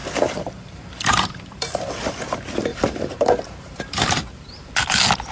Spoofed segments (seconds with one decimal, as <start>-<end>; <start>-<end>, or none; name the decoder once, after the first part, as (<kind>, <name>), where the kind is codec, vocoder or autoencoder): 0.0-1.9 (vocoder, BigVGAN v2); 2.7-4.7

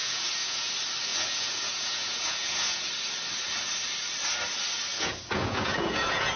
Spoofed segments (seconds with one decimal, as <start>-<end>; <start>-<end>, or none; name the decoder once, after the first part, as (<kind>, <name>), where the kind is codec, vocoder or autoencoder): 0.0-0.7 (vocoder, Vocos); 1.1-2.9; 4.9-6.4

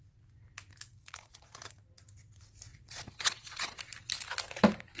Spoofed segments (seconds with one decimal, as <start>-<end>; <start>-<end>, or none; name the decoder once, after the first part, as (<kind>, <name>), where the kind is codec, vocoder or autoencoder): 1.0-1.7 (vocoder, Vocos); 2.7-3.8

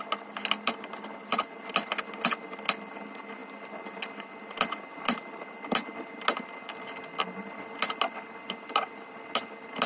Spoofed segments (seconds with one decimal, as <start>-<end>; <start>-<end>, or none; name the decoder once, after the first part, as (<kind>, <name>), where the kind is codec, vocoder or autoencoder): none